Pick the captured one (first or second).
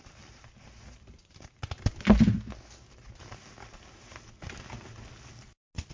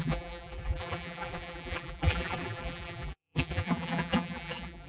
first